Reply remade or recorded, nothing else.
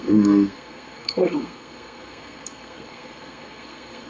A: remade